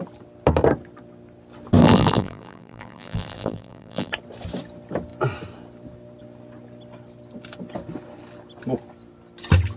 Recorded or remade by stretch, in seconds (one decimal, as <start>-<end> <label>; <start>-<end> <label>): 0.0-1.8 recorded; 1.8-4.1 remade; 4.1-9.8 recorded